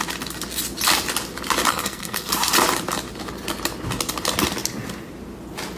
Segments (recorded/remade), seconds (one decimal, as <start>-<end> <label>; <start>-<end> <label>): 0.0-1.7 recorded; 1.7-2.3 remade; 2.3-5.8 recorded